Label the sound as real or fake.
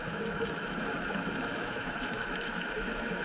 fake